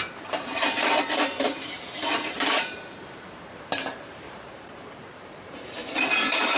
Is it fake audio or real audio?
fake